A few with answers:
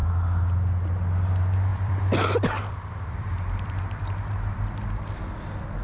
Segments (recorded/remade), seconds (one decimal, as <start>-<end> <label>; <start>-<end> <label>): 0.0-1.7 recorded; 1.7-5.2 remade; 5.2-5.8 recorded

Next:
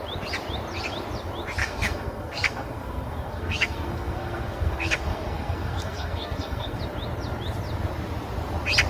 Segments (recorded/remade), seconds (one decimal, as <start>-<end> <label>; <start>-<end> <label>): 0.0-1.6 recorded; 1.6-6.8 remade; 6.8-8.9 recorded

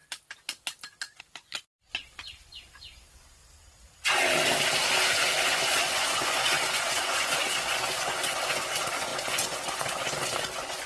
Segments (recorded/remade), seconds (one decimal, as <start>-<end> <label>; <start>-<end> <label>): 0.0-1.2 recorded; 1.2-3.4 remade; 3.4-5.0 recorded; 5.0-10.9 remade

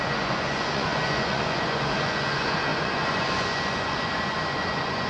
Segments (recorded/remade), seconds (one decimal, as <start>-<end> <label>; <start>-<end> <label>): 0.0-5.1 remade

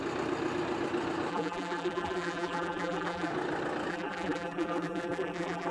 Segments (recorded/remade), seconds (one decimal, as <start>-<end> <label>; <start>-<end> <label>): 0.0-1.3 recorded; 1.3-3.3 remade; 3.3-3.9 recorded; 3.9-5.7 remade